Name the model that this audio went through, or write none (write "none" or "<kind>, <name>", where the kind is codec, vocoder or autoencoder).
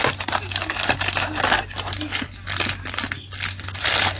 none